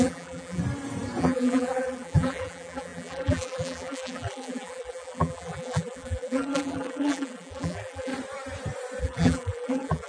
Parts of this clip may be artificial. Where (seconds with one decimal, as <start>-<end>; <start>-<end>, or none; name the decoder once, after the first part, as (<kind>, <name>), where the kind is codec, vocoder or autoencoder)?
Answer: 0.0-0.6 (vocoder, BigVGAN v2); 1.2-8.1; 9.0-10.1